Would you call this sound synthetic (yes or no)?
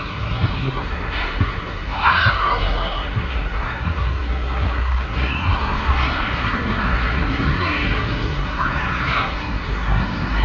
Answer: yes